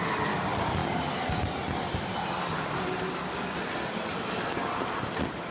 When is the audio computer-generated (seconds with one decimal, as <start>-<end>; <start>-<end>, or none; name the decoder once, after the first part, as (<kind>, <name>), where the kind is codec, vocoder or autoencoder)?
0.8-2.4 (vocoder, BigVGAN v2)